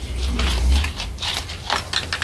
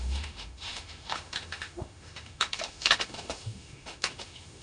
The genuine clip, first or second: first